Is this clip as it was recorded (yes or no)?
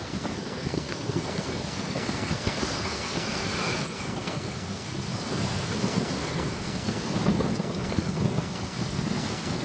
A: no